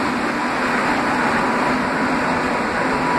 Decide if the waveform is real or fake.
real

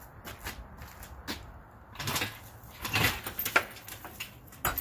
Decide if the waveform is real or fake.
real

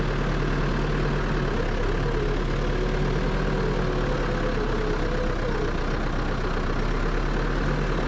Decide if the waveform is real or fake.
real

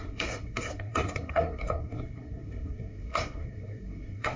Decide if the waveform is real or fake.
fake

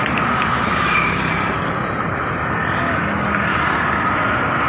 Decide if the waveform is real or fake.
real